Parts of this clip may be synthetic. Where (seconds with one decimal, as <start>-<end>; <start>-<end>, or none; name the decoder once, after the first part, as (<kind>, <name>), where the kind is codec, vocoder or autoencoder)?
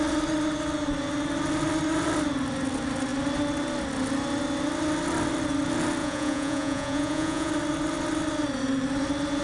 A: 6.0-7.5 (vocoder, Vocos)